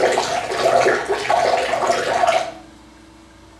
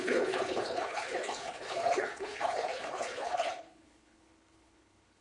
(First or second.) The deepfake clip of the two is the second